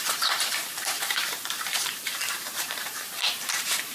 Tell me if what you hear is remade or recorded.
remade